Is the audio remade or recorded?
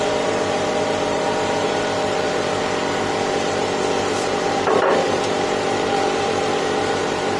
remade